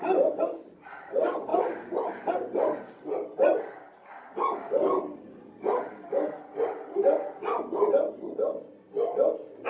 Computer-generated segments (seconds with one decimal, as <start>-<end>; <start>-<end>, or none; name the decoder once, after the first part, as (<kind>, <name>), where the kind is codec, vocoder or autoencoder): none